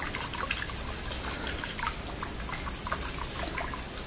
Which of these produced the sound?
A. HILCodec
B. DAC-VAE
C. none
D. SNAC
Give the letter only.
C